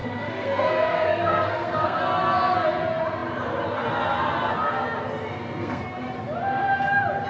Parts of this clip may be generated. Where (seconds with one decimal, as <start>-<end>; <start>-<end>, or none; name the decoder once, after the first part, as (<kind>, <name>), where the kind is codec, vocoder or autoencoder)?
0.0-2.0 (codec, SNAC); 5.2-5.8